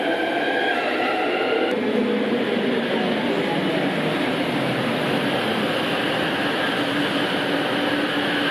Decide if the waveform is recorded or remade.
recorded